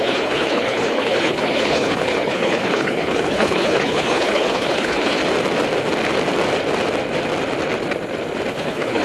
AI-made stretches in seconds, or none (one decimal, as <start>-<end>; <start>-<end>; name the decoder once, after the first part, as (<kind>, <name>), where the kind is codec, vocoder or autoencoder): 0.0-5.2 (codec, HILCodec); 8.5-9.0